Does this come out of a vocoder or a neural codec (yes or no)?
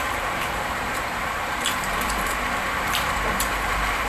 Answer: yes